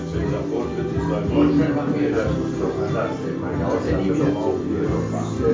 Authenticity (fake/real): real